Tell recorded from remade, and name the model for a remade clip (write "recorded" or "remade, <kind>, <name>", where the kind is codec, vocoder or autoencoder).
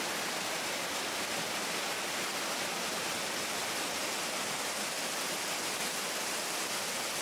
recorded